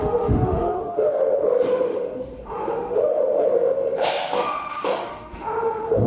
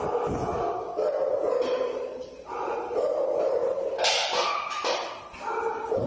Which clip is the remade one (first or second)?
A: first